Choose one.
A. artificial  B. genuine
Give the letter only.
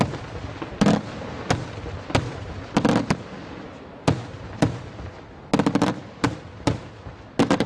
B